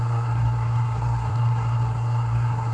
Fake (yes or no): yes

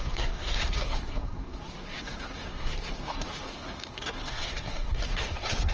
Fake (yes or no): yes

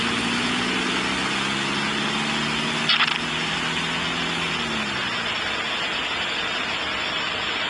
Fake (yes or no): no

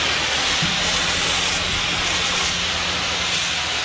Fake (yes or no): no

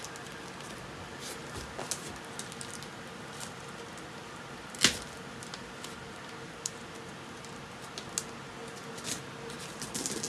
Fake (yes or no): no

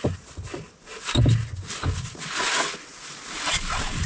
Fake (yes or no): no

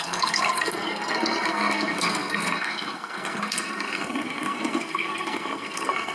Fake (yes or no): yes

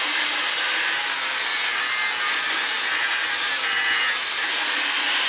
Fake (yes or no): no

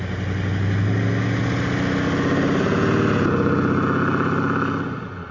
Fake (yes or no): no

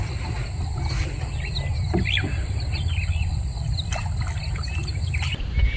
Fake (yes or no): no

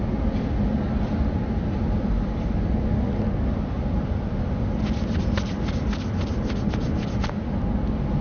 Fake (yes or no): no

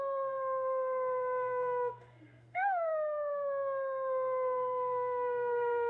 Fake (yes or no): yes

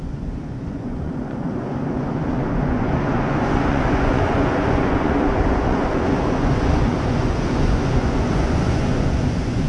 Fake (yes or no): yes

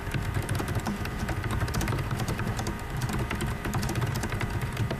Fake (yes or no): yes